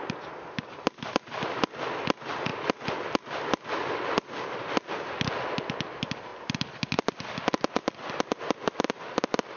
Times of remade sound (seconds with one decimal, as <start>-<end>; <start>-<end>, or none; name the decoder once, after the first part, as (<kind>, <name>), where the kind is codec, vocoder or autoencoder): none